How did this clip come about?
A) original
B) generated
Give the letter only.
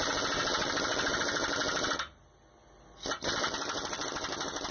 A